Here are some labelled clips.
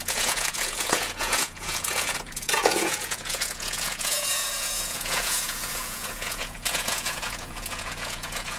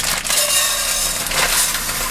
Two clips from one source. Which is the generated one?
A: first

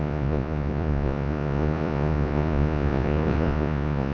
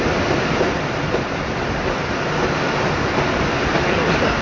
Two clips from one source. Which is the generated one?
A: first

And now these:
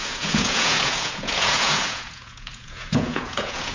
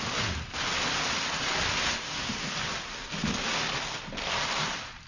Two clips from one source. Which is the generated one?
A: first